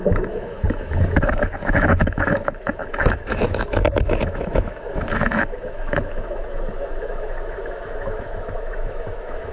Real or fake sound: fake